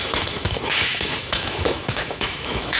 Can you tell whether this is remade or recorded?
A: remade